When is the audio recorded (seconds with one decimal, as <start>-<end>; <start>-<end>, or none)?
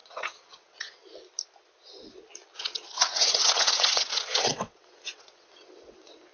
1.0-2.6